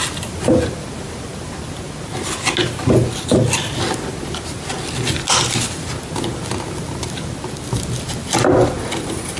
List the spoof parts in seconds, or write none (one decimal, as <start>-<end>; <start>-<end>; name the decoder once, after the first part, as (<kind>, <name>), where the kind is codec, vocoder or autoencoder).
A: none